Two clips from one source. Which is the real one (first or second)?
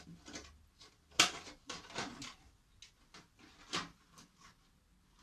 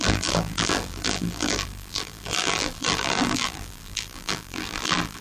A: first